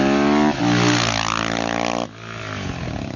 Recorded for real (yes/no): yes